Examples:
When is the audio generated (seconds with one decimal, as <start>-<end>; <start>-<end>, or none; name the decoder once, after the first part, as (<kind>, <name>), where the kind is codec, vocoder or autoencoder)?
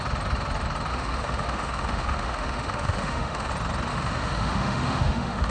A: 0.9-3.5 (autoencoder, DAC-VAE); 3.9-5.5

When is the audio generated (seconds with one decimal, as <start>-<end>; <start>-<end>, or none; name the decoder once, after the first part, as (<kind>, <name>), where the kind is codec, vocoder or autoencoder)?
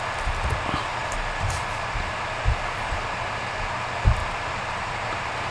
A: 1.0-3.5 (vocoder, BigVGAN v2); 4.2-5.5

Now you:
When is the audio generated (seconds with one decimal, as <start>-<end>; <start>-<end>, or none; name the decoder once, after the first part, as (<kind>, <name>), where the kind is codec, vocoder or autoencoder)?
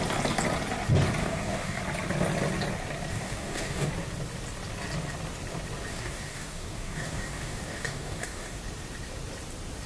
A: 1.2-1.8 (codec, DAC); 3.1-3.9; 5.9-8.6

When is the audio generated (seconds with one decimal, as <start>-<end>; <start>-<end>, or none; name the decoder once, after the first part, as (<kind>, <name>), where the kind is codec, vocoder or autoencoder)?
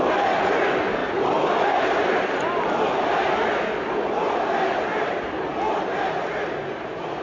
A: 1.0-3.1 (vocoder, BigVGAN v2); 4.9-6.0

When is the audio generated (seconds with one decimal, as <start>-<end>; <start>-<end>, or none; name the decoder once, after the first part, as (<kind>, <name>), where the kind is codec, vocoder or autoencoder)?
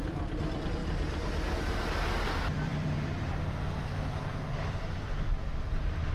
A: 0.0-0.8 (vocoder, BigVGAN v2); 2.1-4.3; 5.5-6.1